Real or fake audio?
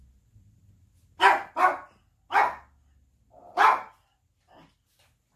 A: real